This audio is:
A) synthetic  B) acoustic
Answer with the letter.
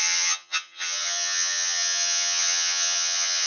A